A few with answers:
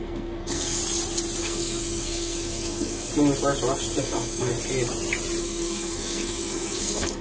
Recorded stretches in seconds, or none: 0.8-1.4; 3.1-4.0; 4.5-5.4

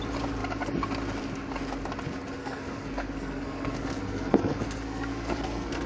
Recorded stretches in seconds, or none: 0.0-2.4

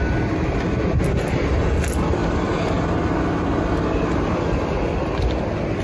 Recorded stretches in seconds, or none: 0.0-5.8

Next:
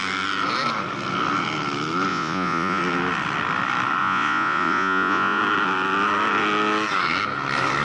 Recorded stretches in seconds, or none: 0.0-2.1; 2.8-4.0; 5.4-7.8

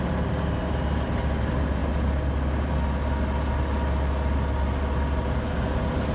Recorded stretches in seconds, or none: 0.0-6.1

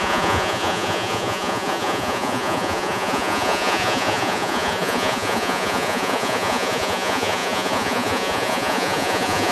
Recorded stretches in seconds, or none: none

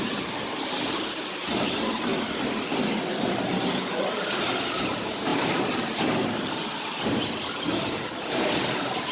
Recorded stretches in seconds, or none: 2.1-3.2